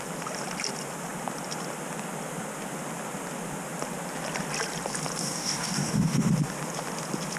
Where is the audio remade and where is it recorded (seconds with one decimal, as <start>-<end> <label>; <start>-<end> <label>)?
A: 0.0-5.2 recorded; 5.2-6.3 remade; 6.3-7.4 recorded